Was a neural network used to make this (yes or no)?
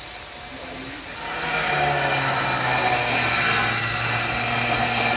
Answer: no